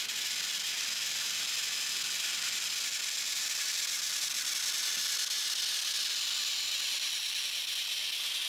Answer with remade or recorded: recorded